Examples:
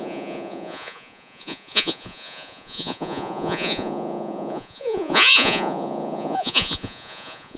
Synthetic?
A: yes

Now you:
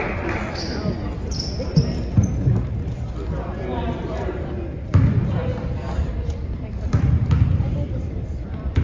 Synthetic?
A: yes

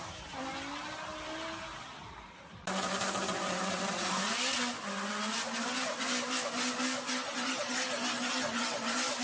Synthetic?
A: no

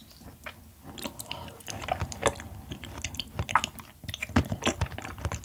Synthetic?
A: no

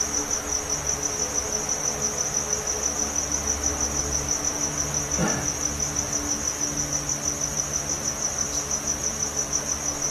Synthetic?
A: no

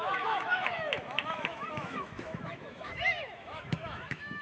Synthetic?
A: yes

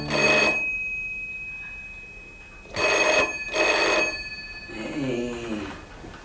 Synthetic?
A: no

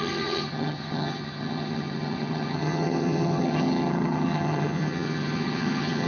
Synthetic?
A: yes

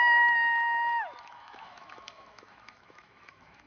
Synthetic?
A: yes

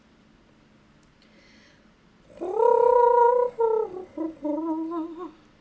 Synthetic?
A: no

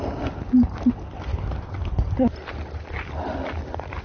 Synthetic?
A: no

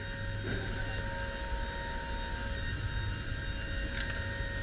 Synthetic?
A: no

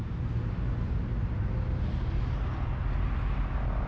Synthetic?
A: no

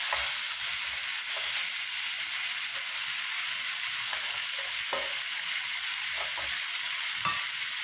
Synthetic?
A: no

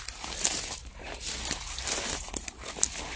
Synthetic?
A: no